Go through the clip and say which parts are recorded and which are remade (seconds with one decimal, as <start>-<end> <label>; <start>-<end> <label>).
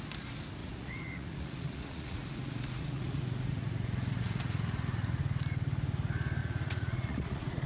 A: 0.0-0.6 recorded; 0.6-5.2 remade; 5.2-6.4 recorded; 6.4-7.7 remade